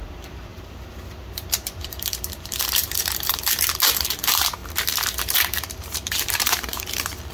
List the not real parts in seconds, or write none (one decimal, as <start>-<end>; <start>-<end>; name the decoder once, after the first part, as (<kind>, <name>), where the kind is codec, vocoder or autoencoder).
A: 0.5-3.4 (vocoder, BigVGAN v2); 4.6-6.8